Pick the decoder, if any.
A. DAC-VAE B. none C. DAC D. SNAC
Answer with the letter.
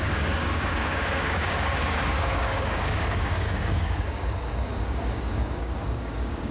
C